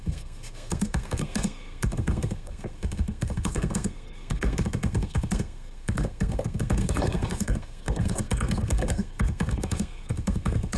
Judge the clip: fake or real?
fake